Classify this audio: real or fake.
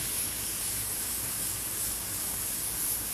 fake